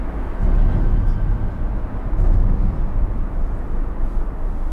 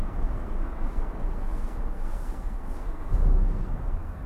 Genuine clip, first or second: first